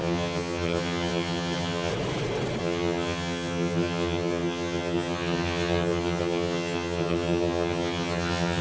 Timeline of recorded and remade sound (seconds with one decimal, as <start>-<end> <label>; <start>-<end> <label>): 0.0-1.9 remade; 1.9-2.6 recorded; 2.6-8.6 remade